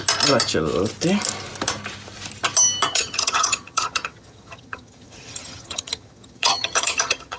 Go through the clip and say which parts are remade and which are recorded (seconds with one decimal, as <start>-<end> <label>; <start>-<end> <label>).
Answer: 0.0-2.9 recorded; 2.9-7.4 remade